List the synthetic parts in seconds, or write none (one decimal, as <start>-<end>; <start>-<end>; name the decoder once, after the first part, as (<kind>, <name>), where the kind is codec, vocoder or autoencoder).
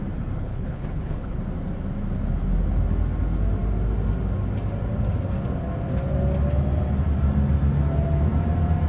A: 0.4-1.4 (codec, HILCodec)